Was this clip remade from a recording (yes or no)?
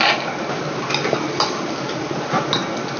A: no